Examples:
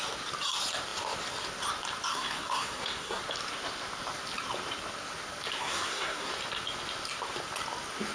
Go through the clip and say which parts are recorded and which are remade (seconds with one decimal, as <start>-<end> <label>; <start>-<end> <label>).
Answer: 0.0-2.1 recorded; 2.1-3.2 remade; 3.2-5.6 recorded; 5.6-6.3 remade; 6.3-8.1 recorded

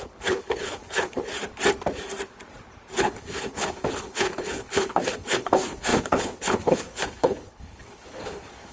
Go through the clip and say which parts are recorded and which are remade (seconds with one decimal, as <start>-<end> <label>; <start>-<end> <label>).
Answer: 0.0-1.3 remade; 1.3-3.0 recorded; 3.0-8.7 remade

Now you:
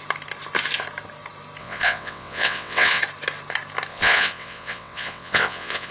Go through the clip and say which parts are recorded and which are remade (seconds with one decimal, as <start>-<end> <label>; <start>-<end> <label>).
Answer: 0.0-1.6 recorded; 1.6-3.0 remade; 3.0-3.9 recorded; 3.9-5.9 remade